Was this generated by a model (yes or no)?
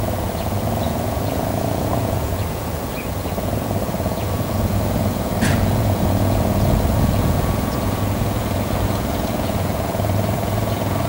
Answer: yes